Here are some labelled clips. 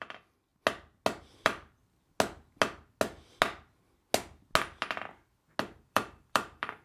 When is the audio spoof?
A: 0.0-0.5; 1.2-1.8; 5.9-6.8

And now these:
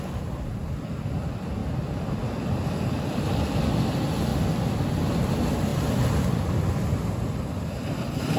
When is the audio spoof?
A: 0.0-1.6; 3.0-4.3; 5.2-5.7

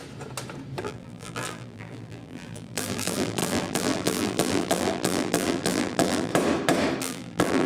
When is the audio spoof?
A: 0.8-6.3; 7.0-7.7

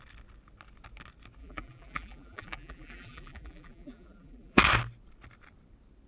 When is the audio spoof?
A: 1.4-4.6

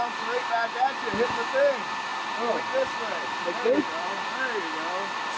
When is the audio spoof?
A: none

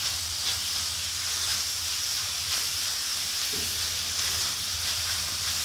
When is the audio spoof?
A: 0.0-1.5; 2.0-3.1; 4.7-5.6